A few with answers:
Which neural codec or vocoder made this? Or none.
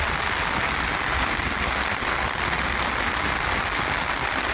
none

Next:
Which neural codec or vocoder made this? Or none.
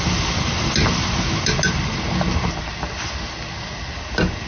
none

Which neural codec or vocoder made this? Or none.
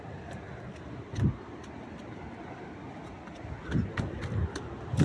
none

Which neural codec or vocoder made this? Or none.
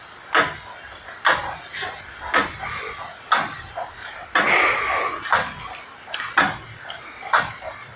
none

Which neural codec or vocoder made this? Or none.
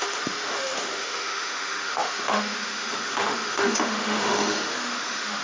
autoencoder, DAC-VAE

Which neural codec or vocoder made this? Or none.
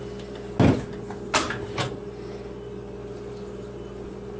none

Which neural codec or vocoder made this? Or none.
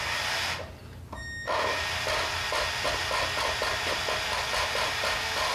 none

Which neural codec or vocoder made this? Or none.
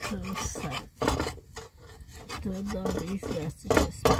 none